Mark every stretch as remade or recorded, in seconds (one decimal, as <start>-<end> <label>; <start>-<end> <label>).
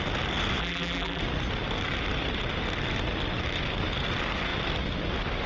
0.0-0.6 recorded; 0.6-1.2 remade; 1.2-5.5 recorded